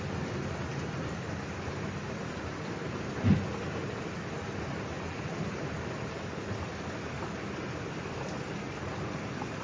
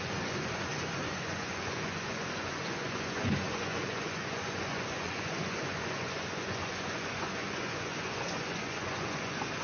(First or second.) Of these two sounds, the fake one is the second